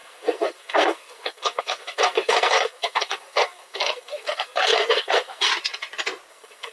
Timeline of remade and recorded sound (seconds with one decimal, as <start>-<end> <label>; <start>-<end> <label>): 0.0-5.5 remade; 5.5-6.3 recorded; 6.3-6.7 remade